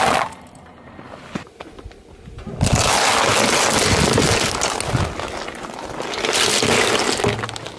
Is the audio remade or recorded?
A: recorded